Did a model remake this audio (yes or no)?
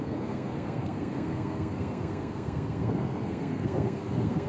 yes